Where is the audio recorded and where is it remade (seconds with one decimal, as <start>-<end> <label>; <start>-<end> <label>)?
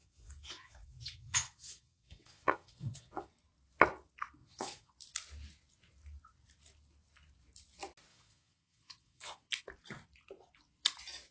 0.0-3.3 remade; 3.3-4.4 recorded; 4.4-4.9 remade; 4.9-8.1 recorded; 8.1-9.4 remade; 9.4-11.3 recorded